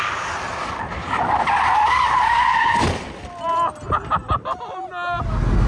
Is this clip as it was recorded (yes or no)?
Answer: yes